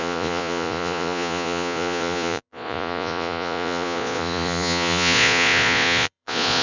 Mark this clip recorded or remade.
remade